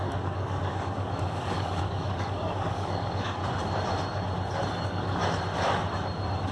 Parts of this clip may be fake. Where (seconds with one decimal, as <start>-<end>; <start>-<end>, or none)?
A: 0.0-3.4; 4.8-5.2